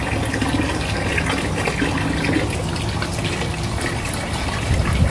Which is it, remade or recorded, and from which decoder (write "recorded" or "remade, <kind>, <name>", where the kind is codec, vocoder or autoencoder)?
recorded